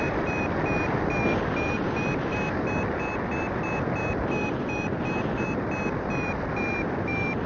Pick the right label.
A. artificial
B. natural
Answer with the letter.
B